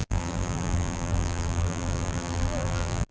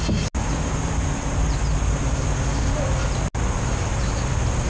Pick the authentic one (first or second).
second